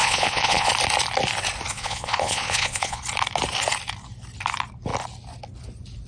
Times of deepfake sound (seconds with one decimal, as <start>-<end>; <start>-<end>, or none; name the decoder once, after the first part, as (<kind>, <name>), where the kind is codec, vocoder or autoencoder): 0.0-0.7 (vocoder, Vocos); 1.7-3.0

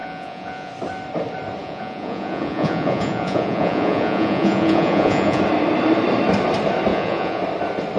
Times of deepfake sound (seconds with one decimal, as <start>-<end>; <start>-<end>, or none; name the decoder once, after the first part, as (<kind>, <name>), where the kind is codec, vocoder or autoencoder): 0.0-0.7 (vocoder, Vocos); 1.6-5.4; 6.9-7.4

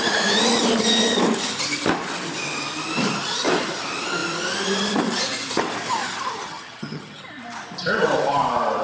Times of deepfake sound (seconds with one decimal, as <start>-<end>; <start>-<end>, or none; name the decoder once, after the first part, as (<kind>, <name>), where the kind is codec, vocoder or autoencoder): 6.4-7.2 (vocoder, HiFi-GAN)

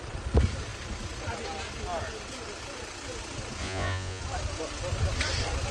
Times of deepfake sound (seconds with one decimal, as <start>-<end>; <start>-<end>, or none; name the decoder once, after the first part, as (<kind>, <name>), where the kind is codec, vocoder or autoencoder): 3.6-4.2 (vocoder, Vocos)